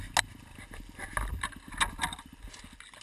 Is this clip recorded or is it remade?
recorded